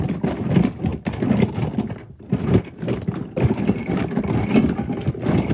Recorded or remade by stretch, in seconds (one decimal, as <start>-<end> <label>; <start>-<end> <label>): 0.0-5.5 recorded